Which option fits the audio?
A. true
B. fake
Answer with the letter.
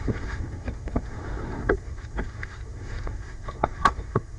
B